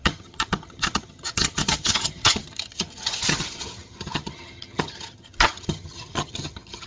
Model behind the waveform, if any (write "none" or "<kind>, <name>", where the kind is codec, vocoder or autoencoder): vocoder, HiFi-GAN